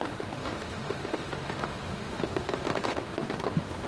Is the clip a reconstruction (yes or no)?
yes